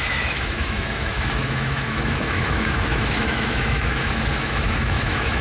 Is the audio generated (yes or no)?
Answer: yes